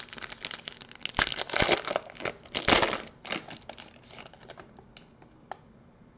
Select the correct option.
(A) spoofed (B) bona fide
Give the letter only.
B